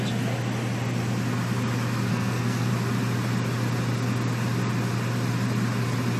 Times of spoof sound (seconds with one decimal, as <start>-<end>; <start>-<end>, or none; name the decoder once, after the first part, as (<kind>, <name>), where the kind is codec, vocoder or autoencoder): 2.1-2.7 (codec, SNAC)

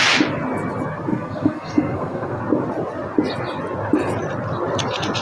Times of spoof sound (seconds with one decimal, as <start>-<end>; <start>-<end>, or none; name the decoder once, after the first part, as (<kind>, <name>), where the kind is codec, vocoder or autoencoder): 1.1-2.4 (codec, SNAC)

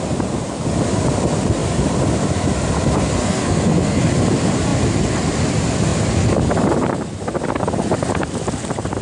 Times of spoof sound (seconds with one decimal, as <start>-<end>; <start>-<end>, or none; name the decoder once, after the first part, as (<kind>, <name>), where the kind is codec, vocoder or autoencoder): 3.2-4.0 (codec, SNAC)

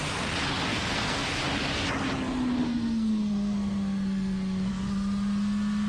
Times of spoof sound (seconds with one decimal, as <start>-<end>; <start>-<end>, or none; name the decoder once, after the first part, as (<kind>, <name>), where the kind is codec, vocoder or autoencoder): 0.7-1.2 (codec, SNAC); 2.6-4.7